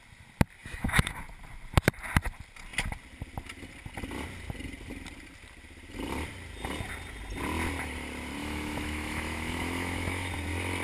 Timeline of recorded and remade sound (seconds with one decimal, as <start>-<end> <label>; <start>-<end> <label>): 0.0-0.6 recorded; 0.6-1.2 remade; 1.2-8.4 recorded; 8.4-10.3 remade; 10.3-10.8 recorded